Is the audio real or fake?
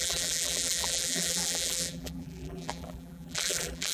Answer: fake